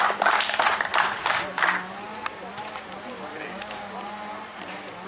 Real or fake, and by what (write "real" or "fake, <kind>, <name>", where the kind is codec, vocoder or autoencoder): real